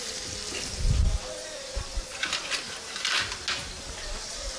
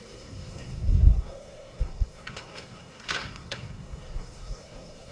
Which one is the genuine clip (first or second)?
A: first